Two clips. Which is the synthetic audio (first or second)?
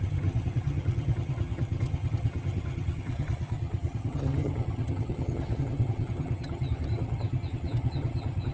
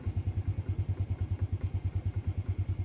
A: first